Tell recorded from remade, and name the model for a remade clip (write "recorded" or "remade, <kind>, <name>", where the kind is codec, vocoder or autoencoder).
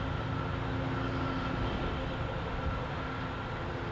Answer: recorded